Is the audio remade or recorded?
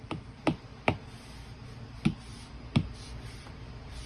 recorded